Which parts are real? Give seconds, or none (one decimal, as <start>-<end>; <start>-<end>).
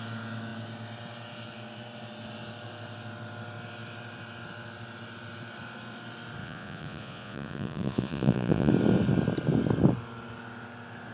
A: 0.0-6.4; 8.7-11.1